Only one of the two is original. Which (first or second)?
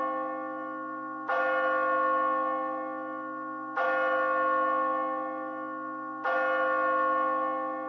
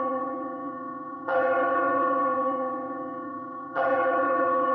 first